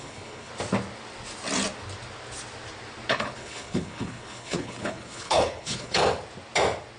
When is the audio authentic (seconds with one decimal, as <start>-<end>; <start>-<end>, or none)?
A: 0.5-3.1; 6.0-7.0